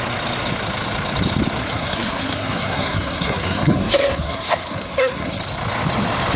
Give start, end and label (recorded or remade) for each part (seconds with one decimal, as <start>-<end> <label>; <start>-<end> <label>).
0.0-1.6 recorded; 1.6-5.4 remade; 5.4-6.4 recorded